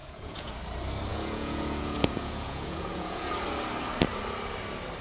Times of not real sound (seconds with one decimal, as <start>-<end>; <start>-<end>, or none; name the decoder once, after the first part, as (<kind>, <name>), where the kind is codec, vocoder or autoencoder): 0.0-0.5 (vocoder, Vocos); 1.1-3.3